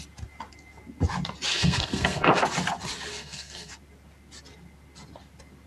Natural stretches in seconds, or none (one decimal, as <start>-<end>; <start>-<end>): 0.0-1.5; 2.3-3.1; 3.7-5.7